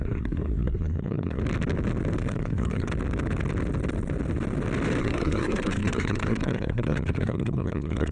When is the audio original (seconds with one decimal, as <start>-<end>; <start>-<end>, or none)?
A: 1.4-2.3; 2.9-5.0